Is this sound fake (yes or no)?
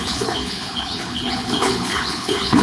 yes